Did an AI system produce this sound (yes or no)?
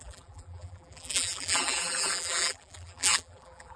yes